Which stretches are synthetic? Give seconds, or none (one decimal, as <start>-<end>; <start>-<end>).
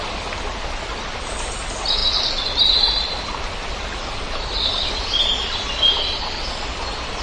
none